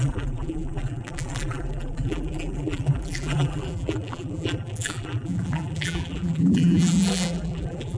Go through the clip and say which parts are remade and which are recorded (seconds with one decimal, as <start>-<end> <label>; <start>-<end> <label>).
0.0-8.0 remade

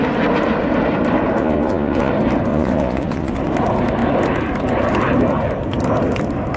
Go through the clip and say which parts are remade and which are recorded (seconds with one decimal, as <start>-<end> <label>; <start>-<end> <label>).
0.0-1.4 recorded; 1.4-2.1 remade; 2.1-2.5 recorded; 2.5-3.4 remade; 3.4-6.6 recorded

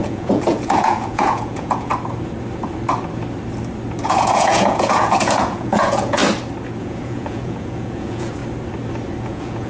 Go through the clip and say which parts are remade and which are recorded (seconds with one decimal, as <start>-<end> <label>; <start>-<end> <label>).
0.0-1.9 remade; 1.9-4.0 recorded; 4.0-6.2 remade; 6.2-6.8 recorded; 6.8-8.4 remade; 8.4-9.2 recorded; 9.2-9.7 remade

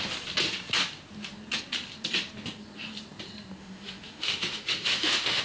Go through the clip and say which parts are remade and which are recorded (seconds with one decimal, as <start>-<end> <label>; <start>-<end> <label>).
0.0-3.6 recorded; 3.6-5.4 remade